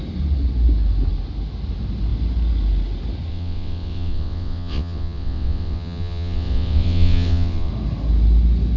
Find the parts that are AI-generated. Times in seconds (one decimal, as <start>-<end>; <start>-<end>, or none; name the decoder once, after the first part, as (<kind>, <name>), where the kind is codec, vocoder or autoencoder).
3.3-7.7 (vocoder, WaveNeXt)